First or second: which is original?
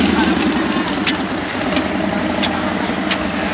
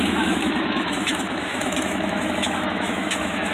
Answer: first